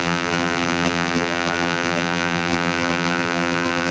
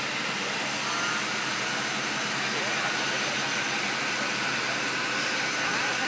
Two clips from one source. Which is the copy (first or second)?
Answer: first